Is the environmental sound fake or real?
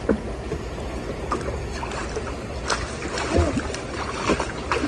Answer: real